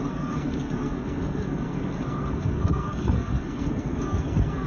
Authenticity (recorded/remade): remade